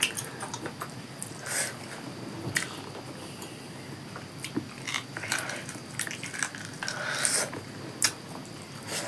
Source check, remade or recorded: recorded